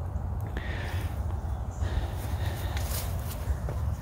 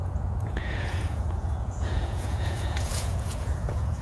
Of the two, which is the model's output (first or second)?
second